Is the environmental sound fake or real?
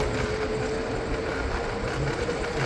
real